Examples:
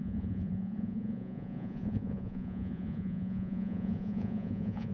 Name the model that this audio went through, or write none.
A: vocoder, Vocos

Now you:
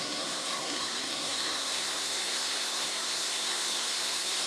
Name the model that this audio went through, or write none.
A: codec, SNAC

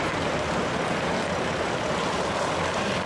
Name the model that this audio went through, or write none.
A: none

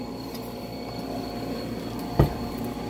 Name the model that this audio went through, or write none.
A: none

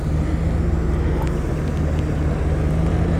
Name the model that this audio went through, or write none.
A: none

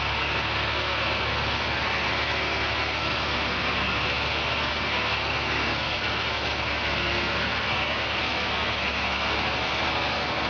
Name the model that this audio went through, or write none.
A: codec, SNAC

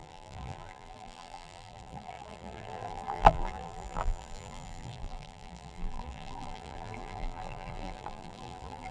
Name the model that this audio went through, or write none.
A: vocoder, BigVGAN v2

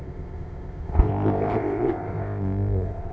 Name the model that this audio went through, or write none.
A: codec, ZipCodec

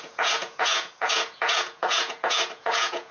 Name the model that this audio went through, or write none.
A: vocoder, Vocos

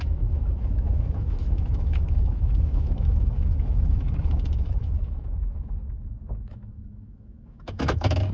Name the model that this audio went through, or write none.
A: autoencoder, DAC-VAE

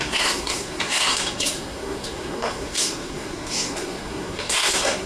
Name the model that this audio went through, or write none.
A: codec, SNAC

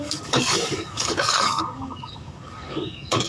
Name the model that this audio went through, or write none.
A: codec, DAC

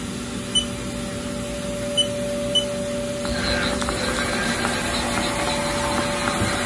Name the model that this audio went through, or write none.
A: none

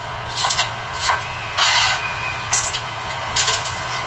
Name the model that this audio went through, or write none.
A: vocoder, Vocos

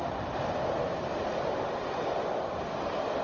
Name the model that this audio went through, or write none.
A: none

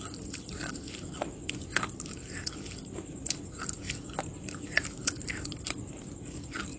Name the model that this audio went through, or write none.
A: none